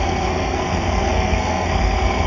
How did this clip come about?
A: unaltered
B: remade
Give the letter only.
B